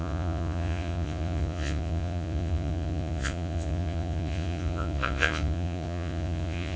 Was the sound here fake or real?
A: fake